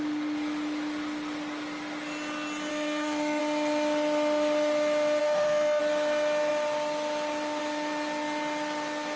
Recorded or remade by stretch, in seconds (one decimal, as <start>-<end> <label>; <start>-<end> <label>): 0.0-2.7 recorded; 2.7-3.4 remade; 3.4-5.2 recorded; 5.2-5.8 remade; 5.8-9.2 recorded